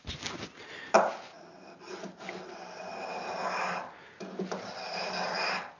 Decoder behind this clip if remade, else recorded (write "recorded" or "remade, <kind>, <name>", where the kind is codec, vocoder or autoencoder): recorded